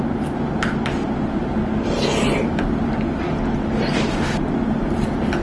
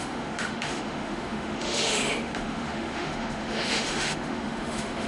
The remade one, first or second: second